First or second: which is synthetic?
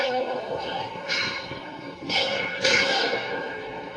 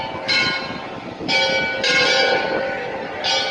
first